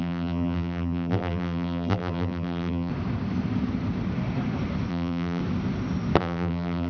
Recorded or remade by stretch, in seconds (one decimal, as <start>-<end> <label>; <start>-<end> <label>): 0.0-2.9 remade; 2.9-4.9 recorded; 4.9-5.4 remade; 5.4-6.2 recorded; 6.2-6.9 remade